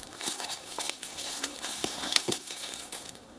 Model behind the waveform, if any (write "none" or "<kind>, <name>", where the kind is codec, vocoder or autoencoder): codec, SNAC